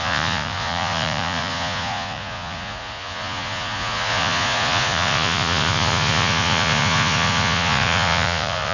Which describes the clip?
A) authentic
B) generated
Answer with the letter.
B